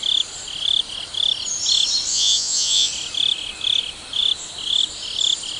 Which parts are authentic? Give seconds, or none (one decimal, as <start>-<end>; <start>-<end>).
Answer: 0.0-2.1; 2.9-5.6